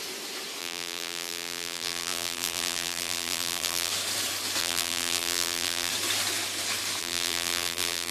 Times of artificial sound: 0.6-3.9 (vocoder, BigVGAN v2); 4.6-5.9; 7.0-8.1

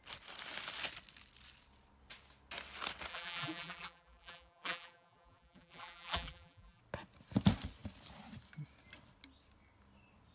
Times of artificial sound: 3.1-6.8 (vocoder, BigVGAN v2)

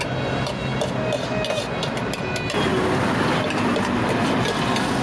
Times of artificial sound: none

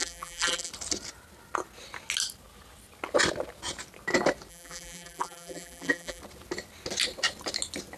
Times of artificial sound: 0.0-0.7 (vocoder, BigVGAN v2); 4.5-6.2

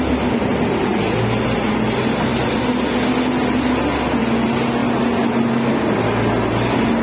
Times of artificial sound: none

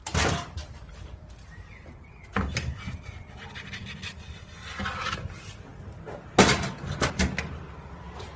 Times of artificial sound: 0.0-2.3 (vocoder, BigVGAN v2)